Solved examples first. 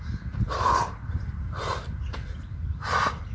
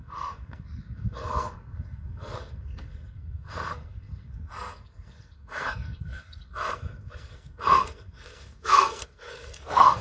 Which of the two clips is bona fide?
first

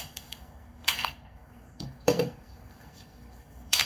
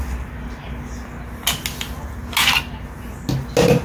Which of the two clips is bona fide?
second